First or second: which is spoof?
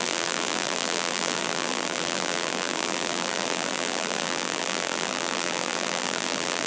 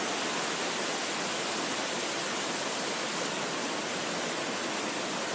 first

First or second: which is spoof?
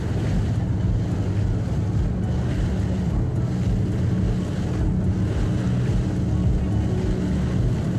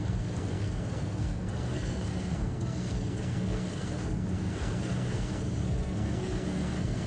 second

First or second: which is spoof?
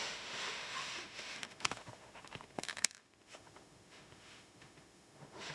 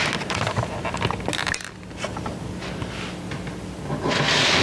first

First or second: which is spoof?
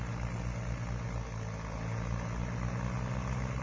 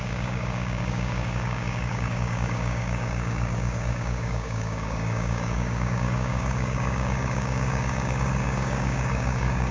second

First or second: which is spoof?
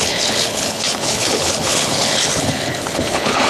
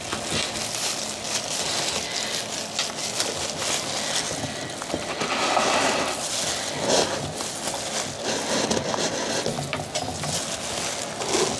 first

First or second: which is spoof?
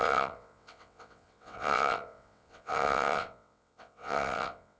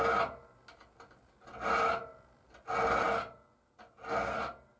first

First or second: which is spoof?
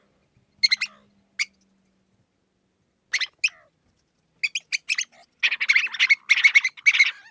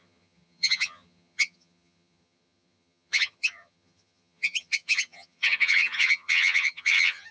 second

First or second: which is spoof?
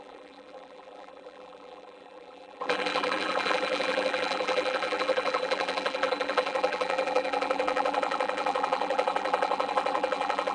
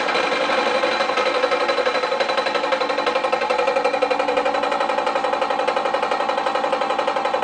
first